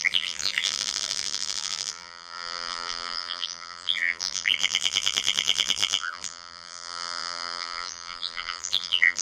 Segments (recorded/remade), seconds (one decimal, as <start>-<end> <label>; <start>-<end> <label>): 0.0-9.2 remade